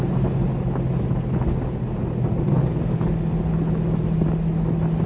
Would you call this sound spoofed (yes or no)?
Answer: no